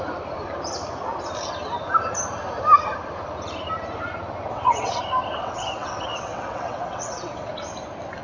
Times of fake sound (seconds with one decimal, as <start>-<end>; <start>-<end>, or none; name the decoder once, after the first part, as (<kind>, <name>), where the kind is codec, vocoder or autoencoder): 4.5-5.0 (vocoder, WaveNeXt); 5.4-7.5